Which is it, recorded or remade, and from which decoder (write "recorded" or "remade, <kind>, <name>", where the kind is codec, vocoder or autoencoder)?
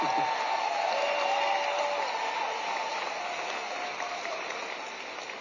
recorded